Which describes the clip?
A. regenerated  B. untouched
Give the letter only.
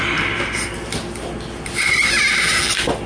B